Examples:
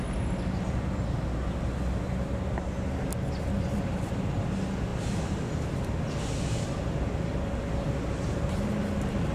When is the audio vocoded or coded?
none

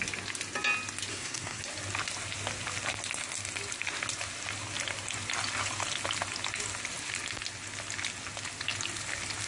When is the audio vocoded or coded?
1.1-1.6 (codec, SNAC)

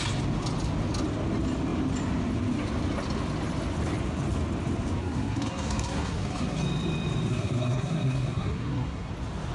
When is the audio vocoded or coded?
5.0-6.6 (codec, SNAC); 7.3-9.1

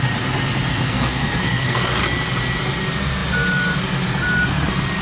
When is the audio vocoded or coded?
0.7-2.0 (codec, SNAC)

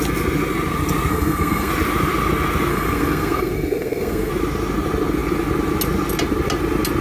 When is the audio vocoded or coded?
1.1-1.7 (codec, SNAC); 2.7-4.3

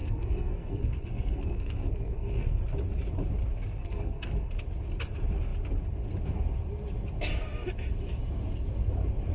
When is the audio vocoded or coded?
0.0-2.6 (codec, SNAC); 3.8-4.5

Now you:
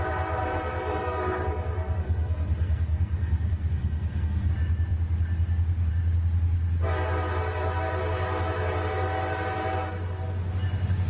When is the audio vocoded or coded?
0.4-4.5 (codec, SNAC)

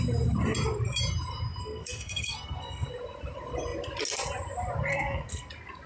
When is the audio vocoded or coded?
1.6-2.9 (codec, SNAC); 4.9-5.5